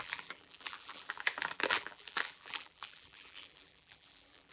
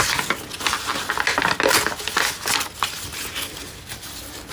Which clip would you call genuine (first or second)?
second